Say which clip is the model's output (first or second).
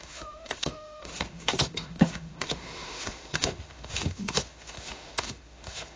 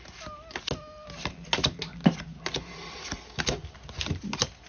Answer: first